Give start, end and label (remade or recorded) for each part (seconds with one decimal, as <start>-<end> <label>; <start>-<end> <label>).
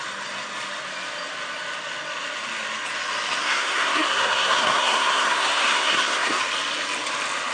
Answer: 0.0-3.4 recorded; 3.4-6.4 remade; 6.4-7.5 recorded